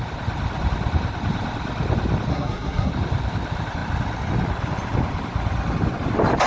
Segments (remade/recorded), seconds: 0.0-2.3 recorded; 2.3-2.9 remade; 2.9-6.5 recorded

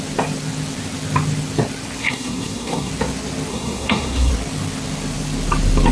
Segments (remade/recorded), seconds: 0.0-2.0 recorded; 2.0-2.9 remade; 2.9-3.5 recorded; 3.5-4.3 remade; 4.3-5.9 recorded

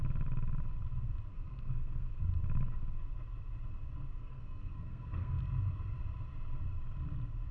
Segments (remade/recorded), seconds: 0.0-1.3 recorded; 1.3-2.2 remade; 2.2-4.2 recorded; 4.2-5.4 remade; 5.4-7.5 recorded

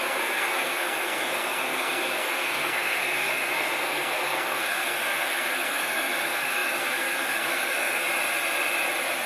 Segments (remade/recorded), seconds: 0.0-8.0 remade; 8.0-9.3 recorded